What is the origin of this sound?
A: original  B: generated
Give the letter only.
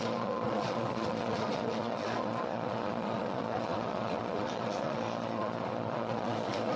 B